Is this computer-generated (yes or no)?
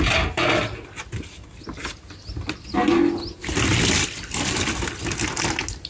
no